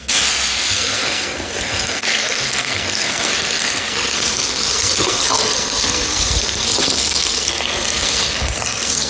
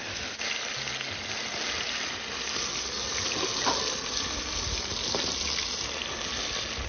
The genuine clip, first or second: second